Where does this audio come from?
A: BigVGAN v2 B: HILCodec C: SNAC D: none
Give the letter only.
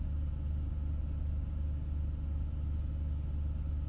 D